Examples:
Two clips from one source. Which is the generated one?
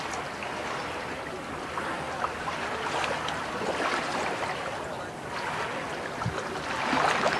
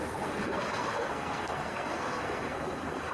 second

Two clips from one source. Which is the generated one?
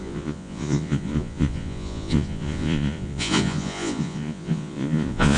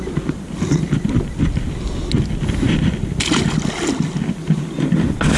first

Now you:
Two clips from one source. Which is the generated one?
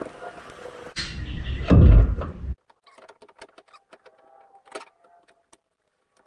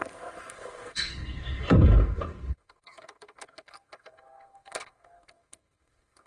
second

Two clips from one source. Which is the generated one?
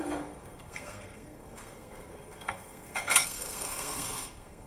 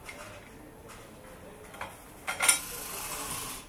first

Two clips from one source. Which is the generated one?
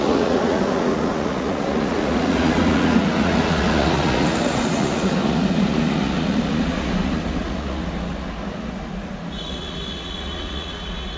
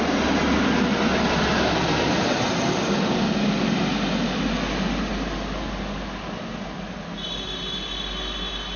first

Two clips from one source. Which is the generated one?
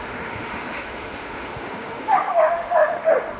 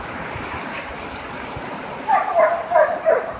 first